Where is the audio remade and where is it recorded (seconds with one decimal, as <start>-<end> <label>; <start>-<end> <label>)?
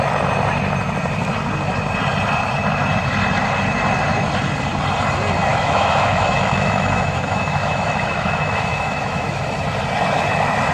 0.0-5.5 recorded; 5.5-9.4 remade; 9.4-10.7 recorded